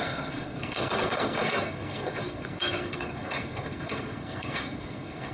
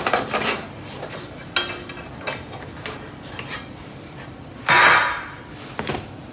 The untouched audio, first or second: second